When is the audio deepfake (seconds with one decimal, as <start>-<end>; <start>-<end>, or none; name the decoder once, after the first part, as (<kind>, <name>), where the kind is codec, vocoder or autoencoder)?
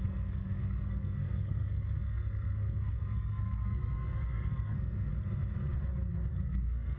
0.0-5.1 (codec, SNAC); 6.3-7.0